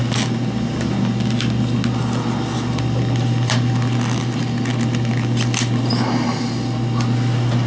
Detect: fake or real real